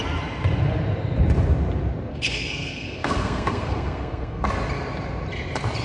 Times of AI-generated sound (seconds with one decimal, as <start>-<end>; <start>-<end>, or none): 2.1-4.5